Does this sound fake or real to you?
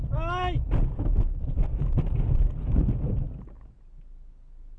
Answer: real